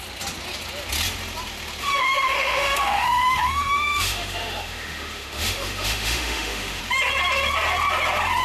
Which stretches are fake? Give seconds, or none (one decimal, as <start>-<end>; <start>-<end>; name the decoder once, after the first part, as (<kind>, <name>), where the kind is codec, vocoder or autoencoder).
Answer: 1.8-6.8 (autoencoder, DAC-VAE)